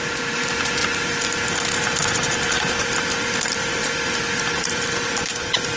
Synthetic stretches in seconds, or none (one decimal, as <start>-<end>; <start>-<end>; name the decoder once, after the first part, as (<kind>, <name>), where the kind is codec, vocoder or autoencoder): 3.8-5.1 (vocoder, BigVGAN v2)